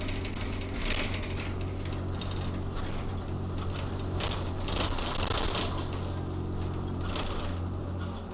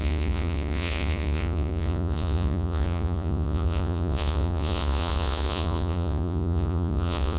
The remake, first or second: second